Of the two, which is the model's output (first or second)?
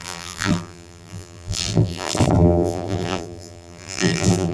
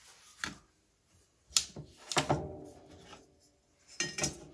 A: first